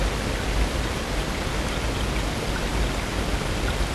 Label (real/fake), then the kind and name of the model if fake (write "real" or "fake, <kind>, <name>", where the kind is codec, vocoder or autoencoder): real